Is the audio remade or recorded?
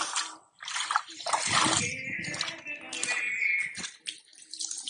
recorded